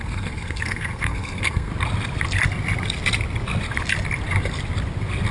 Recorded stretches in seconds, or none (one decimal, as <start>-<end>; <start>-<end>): 1.7-5.3